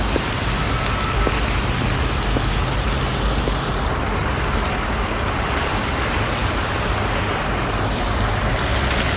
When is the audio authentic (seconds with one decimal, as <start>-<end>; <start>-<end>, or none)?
0.0-9.2